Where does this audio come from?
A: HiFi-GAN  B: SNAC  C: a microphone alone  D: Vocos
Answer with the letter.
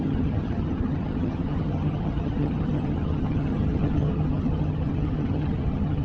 A